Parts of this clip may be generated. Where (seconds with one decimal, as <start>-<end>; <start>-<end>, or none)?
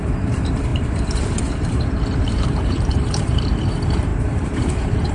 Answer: 0.0-5.1